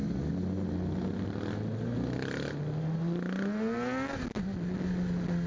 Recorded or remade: recorded